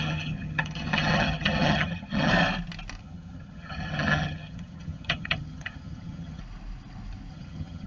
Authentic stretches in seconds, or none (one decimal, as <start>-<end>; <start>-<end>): 2.3-3.0; 6.4-7.3